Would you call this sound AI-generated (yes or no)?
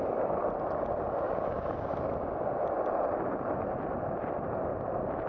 no